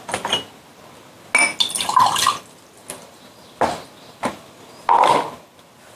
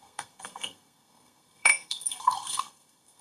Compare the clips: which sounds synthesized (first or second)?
second